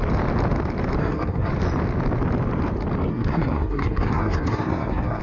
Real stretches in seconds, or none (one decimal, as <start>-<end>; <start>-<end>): 0.0-1.0; 1.5-3.1